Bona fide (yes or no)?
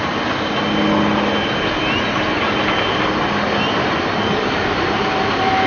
yes